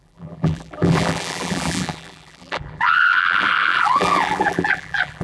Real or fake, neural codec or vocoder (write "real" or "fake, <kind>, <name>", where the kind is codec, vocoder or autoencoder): fake, vocoder, BigVGAN v2